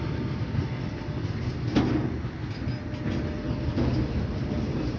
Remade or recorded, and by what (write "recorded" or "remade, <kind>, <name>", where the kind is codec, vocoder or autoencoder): recorded